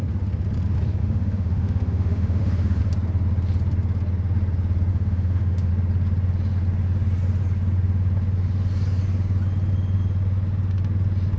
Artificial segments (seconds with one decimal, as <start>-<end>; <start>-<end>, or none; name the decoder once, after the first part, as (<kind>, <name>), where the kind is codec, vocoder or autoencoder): 1.0-2.8 (autoencoder, DAC-VAE); 4.9-5.7